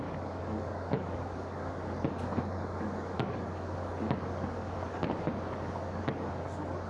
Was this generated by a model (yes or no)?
yes